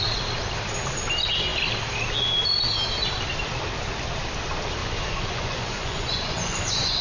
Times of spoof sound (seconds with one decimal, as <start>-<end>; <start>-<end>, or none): 4.8-7.0